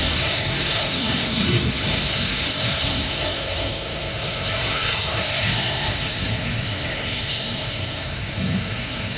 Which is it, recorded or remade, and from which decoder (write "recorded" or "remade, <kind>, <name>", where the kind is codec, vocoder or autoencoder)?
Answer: remade, codec, SNAC